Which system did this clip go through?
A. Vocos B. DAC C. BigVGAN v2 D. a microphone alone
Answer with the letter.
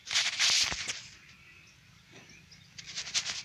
D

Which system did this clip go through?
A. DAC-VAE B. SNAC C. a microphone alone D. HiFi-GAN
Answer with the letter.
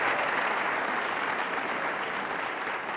C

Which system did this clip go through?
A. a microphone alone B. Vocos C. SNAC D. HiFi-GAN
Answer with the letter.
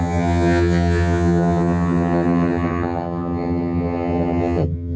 D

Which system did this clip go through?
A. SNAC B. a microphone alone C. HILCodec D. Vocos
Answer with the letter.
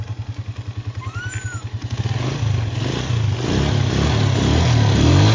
B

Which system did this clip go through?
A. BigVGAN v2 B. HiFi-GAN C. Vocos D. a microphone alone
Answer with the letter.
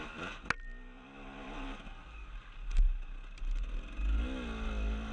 D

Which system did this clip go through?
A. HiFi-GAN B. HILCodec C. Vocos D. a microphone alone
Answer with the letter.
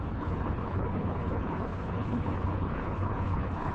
B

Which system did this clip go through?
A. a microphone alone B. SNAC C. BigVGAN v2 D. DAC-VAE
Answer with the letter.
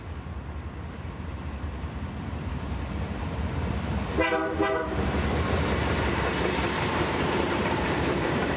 C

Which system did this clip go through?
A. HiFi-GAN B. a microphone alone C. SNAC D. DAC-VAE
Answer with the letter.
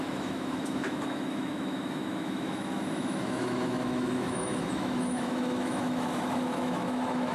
D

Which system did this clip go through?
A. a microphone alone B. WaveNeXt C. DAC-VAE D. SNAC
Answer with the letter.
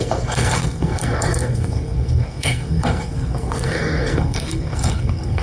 D